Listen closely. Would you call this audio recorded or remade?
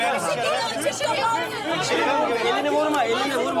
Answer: recorded